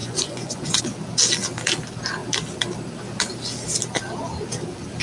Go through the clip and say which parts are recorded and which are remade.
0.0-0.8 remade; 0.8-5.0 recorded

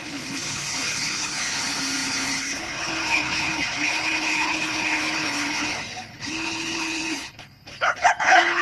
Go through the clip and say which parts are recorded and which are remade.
0.0-8.6 remade

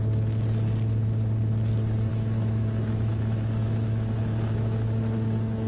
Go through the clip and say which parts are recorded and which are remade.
0.0-2.1 recorded; 2.1-5.7 remade

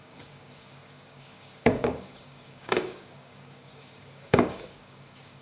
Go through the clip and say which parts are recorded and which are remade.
0.0-5.4 remade